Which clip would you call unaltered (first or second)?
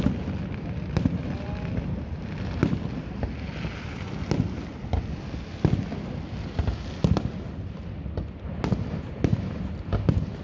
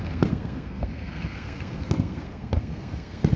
first